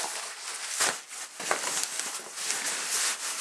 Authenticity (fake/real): real